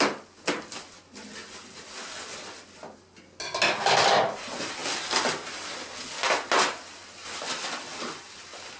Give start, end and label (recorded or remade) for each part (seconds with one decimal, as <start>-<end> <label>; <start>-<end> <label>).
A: 0.0-8.8 recorded